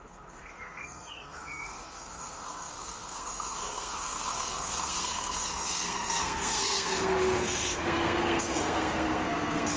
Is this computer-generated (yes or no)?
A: yes